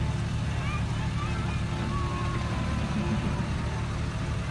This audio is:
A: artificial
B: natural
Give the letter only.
B